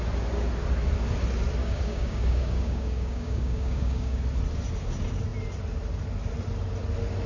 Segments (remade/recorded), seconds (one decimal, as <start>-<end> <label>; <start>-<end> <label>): 0.0-1.6 recorded; 1.6-4.2 remade; 4.2-7.3 recorded